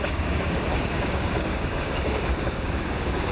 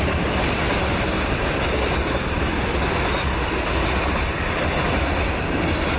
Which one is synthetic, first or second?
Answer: first